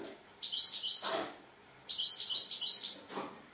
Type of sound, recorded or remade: recorded